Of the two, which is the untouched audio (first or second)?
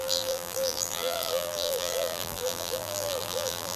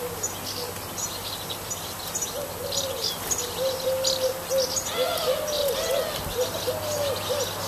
second